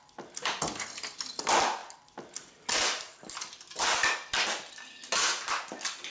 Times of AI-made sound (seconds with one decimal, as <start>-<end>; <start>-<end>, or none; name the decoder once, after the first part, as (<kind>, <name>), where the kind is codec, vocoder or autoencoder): none